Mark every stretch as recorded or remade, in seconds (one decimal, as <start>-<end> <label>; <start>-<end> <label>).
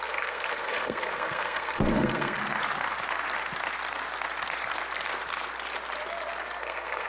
0.0-2.4 remade; 2.4-6.6 recorded; 6.6-7.1 remade